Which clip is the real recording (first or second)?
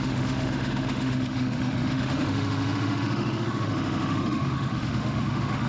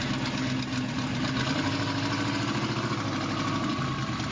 second